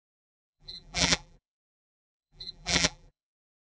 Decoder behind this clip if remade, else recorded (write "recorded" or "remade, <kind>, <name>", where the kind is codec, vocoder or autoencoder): remade, vocoder, BigVGAN v2